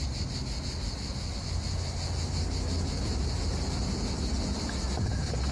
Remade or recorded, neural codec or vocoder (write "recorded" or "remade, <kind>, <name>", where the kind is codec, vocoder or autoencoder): recorded